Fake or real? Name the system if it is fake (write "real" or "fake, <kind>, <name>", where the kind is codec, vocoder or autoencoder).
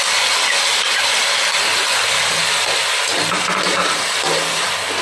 real